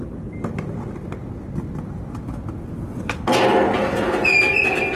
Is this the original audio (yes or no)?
yes